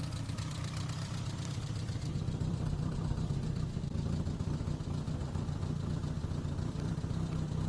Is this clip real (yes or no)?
no